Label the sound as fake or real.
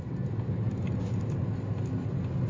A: real